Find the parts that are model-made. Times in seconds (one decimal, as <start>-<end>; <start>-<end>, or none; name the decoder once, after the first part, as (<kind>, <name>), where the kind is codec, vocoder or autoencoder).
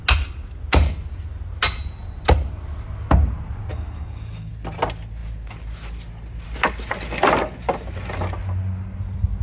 3.7-4.5 (codec, DAC)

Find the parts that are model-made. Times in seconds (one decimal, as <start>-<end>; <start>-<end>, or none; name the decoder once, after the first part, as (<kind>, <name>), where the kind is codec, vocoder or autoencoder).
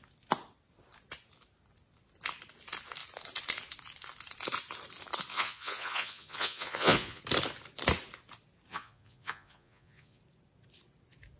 5.3-7.2 (vocoder, Vocos); 8.7-10.2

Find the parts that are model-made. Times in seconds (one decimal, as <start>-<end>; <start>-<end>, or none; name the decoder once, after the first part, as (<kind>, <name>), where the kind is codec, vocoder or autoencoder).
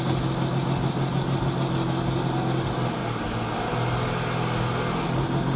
none